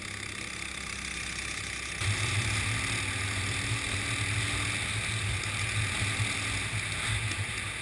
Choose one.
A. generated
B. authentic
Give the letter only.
B